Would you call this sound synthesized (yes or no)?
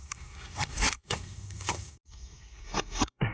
yes